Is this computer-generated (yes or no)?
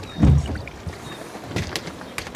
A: no